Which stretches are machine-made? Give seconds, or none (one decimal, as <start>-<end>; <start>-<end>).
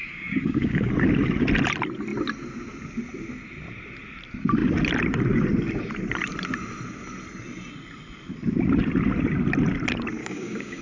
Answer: 0.0-0.9; 10.2-10.8